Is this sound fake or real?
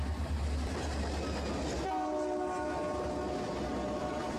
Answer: real